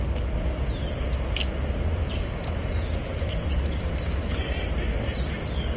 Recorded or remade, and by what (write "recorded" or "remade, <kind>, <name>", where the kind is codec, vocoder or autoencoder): recorded